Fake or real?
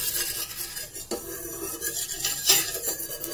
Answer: real